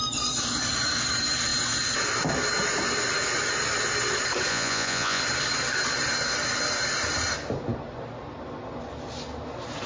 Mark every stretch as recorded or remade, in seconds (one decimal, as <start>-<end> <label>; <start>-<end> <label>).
0.0-4.5 recorded; 4.5-5.2 remade; 5.2-9.9 recorded